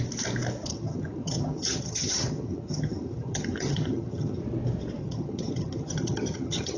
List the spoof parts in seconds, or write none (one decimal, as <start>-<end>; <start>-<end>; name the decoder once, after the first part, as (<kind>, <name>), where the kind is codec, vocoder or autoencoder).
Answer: 0.7-4.4 (vocoder, HiFi-GAN); 5.0-6.8